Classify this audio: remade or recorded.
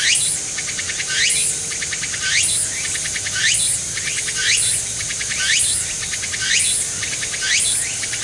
recorded